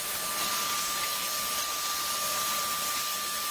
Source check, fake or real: real